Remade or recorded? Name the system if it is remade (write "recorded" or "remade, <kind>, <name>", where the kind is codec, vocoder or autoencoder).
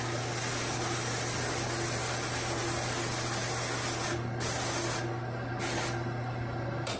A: recorded